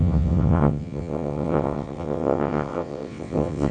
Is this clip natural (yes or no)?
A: no